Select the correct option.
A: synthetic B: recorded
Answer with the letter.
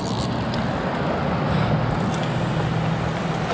B